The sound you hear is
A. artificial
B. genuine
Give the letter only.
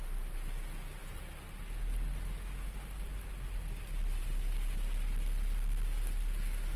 B